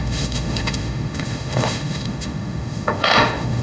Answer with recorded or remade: remade